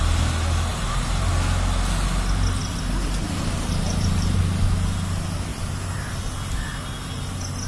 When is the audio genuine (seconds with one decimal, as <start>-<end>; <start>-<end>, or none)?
0.0-0.7; 1.3-2.6; 4.4-5.5; 6.0-7.7